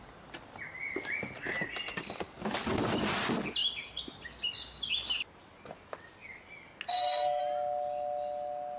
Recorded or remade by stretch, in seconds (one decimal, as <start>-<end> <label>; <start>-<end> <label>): 0.0-6.9 recorded; 6.9-7.4 remade; 7.4-8.8 recorded